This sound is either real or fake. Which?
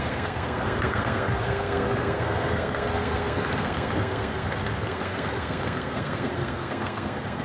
fake